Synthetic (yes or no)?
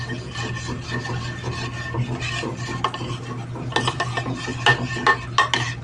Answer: no